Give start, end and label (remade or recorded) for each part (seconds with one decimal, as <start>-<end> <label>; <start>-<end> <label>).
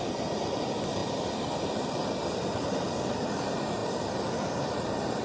0.0-5.2 recorded